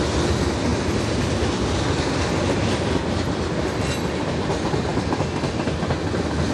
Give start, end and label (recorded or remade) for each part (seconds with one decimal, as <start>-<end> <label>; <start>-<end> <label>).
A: 0.0-6.5 recorded